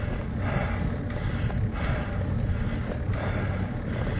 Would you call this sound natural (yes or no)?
yes